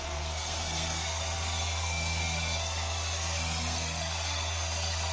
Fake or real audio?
fake